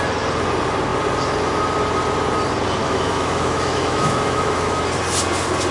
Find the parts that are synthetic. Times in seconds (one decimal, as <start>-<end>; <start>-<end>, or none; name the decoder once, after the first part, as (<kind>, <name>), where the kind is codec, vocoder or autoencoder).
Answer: 2.8-4.8 (autoencoder, DAC-VAE)